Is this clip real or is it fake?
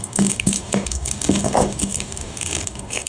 fake